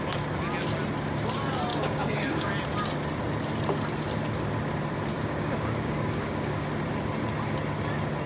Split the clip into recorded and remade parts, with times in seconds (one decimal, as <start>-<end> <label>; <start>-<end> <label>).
0.0-1.7 recorded; 1.7-2.5 remade; 2.5-5.1 recorded; 5.1-6.7 remade; 6.7-8.3 recorded